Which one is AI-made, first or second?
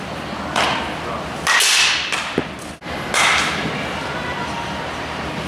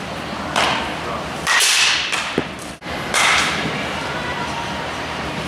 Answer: second